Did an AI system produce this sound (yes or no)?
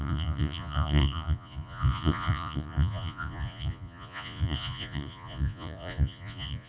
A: yes